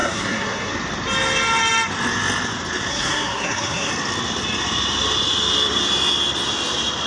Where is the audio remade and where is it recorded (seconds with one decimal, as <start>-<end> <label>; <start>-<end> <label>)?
0.0-0.7 remade; 0.7-2.9 recorded; 2.9-3.9 remade; 3.9-7.1 recorded